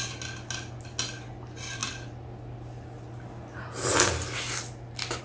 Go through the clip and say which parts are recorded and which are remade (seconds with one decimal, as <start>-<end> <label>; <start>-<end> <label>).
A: 0.0-5.2 recorded